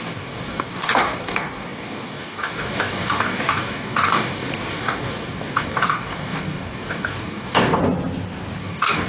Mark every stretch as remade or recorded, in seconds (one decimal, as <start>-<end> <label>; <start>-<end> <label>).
0.0-7.8 remade; 7.8-8.6 recorded; 8.6-9.1 remade